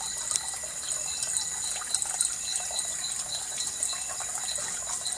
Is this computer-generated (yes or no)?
no